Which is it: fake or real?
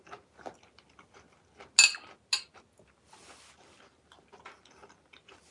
real